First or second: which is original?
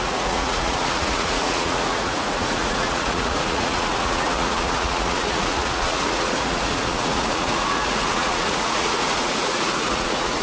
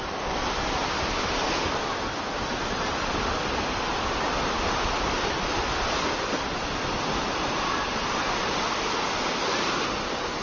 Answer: second